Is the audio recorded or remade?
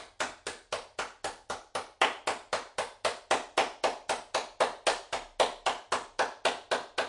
recorded